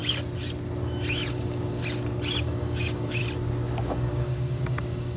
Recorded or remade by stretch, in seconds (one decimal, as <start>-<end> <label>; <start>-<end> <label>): 0.0-1.3 recorded; 1.3-1.8 remade; 1.8-2.4 recorded; 2.4-3.2 remade; 3.2-3.8 recorded; 3.8-5.2 remade